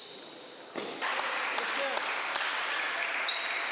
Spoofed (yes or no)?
no